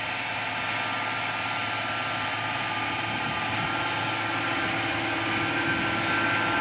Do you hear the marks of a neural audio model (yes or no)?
no